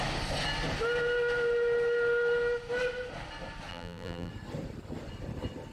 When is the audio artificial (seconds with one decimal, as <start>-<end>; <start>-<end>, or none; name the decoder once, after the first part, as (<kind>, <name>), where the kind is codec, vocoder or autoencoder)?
3.7-4.3 (vocoder, BigVGAN v2)